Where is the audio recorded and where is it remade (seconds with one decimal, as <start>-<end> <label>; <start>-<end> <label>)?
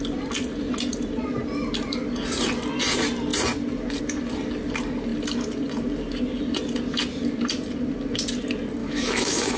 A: 0.0-8.8 recorded; 8.8-9.6 remade